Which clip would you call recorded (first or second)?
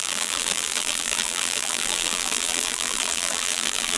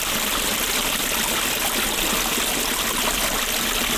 second